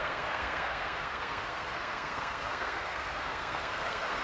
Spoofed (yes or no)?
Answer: yes